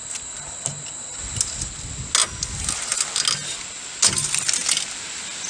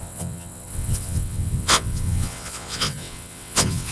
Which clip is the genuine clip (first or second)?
first